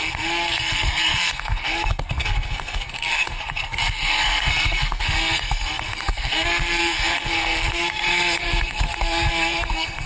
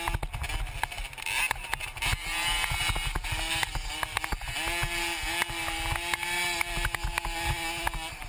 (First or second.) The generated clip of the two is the first